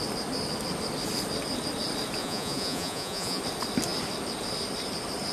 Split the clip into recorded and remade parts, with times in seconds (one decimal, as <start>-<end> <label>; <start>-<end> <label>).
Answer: 0.0-2.2 recorded; 2.2-3.4 remade; 3.4-5.3 recorded